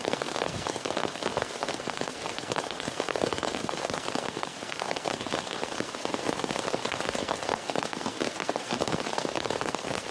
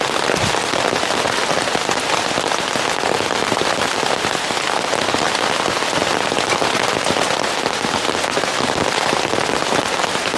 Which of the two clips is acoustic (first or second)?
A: second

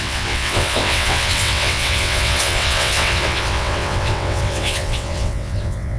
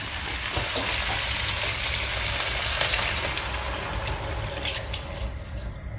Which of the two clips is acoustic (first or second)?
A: second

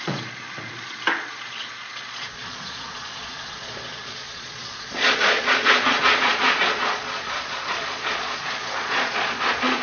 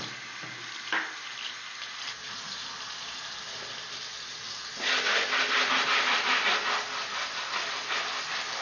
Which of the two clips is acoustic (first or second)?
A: second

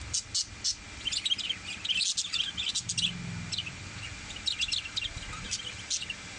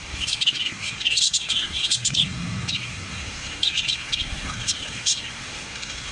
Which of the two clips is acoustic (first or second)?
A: first